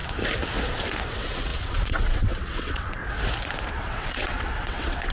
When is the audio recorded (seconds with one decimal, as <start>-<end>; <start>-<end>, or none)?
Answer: 0.0-1.1; 3.0-3.7